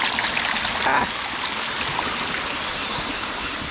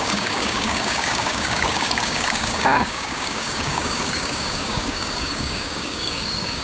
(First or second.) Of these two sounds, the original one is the first